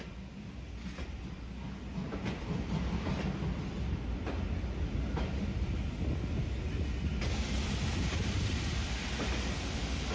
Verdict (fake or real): real